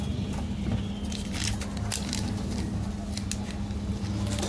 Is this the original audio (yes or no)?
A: yes